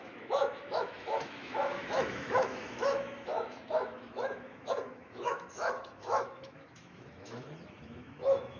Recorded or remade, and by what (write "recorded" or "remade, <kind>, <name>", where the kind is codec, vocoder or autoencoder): remade, autoencoder, DAC-VAE